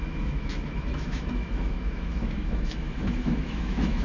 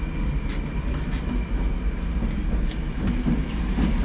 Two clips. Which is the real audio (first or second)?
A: second